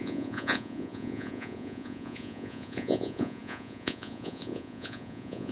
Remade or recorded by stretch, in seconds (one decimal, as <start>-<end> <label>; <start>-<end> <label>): 0.0-5.5 remade